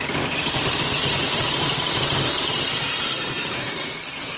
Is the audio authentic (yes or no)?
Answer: no